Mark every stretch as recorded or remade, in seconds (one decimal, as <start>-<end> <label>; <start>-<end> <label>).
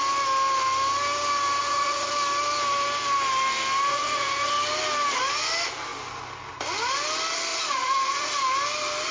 0.0-1.6 recorded; 1.6-2.1 remade; 2.1-3.9 recorded; 3.9-4.5 remade; 4.5-7.5 recorded; 7.5-8.3 remade; 8.3-9.1 recorded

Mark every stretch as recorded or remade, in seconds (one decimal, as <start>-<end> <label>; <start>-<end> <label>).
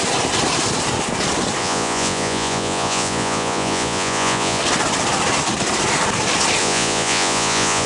0.0-1.6 recorded; 1.6-4.6 remade; 4.6-6.6 recorded; 6.6-7.9 remade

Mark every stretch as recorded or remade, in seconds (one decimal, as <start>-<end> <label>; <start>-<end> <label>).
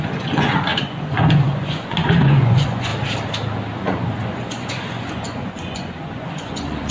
0.0-2.9 remade; 2.9-3.8 recorded; 3.8-6.9 remade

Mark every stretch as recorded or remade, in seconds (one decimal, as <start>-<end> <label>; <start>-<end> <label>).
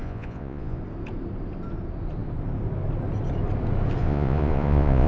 0.0-0.8 remade; 0.8-4.0 recorded; 4.0-5.1 remade